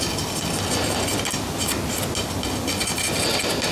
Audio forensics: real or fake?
real